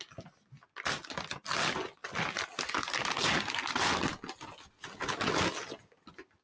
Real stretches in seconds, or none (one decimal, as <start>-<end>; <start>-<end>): 0.0-6.4